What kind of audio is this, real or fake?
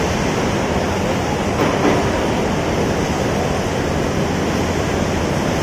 real